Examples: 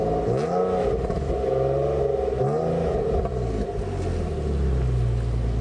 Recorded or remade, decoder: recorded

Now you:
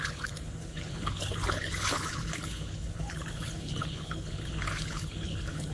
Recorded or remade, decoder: remade, codec, HILCodec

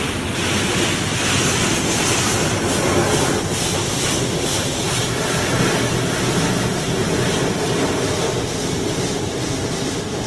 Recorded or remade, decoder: recorded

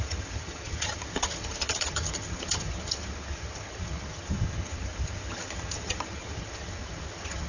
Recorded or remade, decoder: remade, vocoder, HiFi-GAN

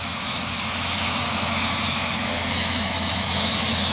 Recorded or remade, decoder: remade, autoencoder, DAC-VAE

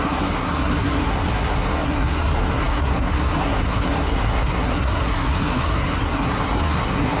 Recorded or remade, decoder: remade, codec, SNAC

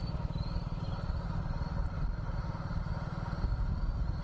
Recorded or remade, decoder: recorded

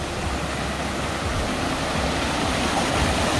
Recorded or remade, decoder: recorded